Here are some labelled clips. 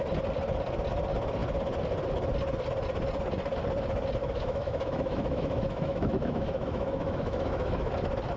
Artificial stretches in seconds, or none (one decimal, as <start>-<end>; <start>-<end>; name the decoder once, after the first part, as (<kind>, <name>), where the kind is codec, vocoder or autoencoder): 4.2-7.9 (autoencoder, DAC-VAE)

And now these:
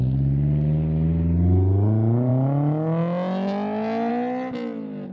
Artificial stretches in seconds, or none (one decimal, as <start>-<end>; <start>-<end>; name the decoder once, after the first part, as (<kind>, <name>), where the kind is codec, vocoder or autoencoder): none

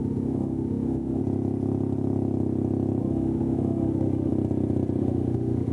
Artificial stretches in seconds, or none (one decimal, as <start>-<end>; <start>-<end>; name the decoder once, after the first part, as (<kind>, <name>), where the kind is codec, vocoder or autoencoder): 0.0-1.2 (autoencoder, DAC-VAE); 3.0-4.3; 5.0-5.7

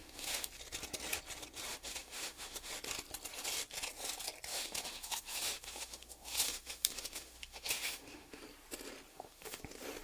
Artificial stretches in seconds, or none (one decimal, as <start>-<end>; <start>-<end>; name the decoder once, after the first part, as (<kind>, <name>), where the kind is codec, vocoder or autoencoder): 0.0-0.5 (autoencoder, DAC-VAE); 1.7-2.7; 4.5-8.4; 9.1-9.6

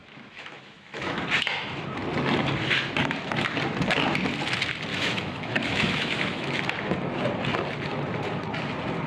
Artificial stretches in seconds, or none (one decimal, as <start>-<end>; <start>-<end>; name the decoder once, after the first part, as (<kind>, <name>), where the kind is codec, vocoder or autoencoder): 0.0-1.2 (autoencoder, DAC-VAE); 4.9-6.6